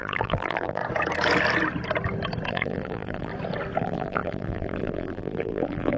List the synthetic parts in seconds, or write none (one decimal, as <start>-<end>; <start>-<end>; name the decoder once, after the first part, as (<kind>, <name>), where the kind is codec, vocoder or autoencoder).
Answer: 0.0-0.8 (vocoder, BigVGAN v2); 2.5-3.3; 3.8-6.0